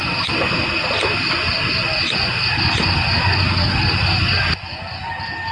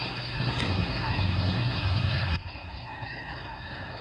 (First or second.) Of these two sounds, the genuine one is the first